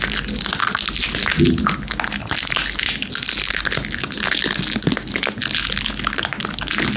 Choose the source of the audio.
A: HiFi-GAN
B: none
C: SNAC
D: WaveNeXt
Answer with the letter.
B